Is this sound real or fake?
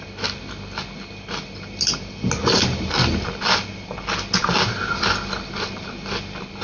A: real